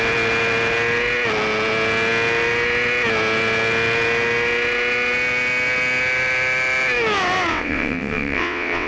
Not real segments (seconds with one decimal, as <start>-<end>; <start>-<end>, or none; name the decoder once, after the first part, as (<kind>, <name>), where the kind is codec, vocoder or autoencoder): 7.5-8.9 (vocoder, WaveNeXt)